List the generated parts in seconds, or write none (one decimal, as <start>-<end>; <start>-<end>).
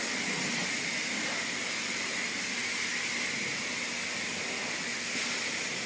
none